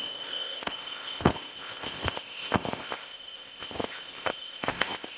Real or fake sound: fake